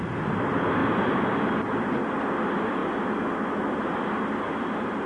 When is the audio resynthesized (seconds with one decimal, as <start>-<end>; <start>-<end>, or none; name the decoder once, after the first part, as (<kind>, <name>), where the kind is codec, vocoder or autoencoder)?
0.0-0.8 (vocoder, BigVGAN v2); 2.0-2.8; 4.5-5.1

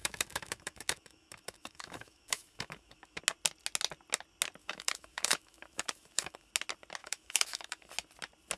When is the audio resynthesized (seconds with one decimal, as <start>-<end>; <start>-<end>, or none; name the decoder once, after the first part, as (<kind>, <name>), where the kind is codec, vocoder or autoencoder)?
0.0-3.2 (autoencoder, DAC-VAE); 4.6-6.5; 7.0-7.9